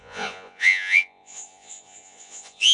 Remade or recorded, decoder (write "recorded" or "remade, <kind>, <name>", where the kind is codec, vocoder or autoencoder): remade, vocoder, Vocos